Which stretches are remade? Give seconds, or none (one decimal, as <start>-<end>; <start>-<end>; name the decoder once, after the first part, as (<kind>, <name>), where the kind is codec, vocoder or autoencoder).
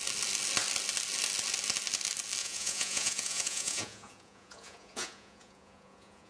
2.4-6.3 (vocoder, Vocos)